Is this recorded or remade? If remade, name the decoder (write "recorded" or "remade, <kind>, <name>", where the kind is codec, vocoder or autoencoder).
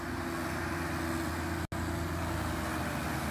recorded